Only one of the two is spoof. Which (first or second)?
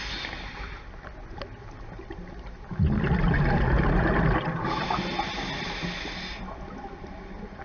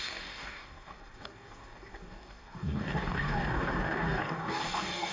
second